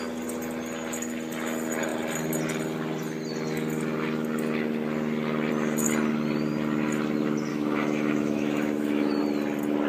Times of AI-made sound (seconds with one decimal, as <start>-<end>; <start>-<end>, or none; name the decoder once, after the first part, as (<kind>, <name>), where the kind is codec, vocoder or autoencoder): 7.5-9.2 (autoencoder, DAC-VAE)